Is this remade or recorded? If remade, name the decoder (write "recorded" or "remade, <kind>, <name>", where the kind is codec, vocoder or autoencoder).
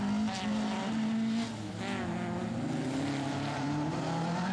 recorded